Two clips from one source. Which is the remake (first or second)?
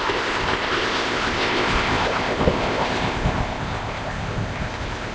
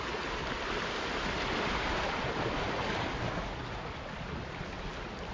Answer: first